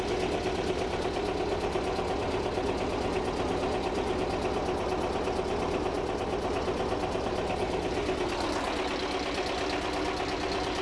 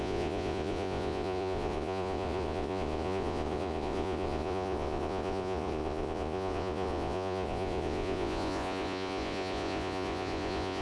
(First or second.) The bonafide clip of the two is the first